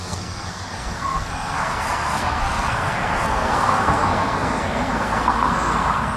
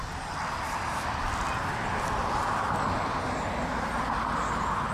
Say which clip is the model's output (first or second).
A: first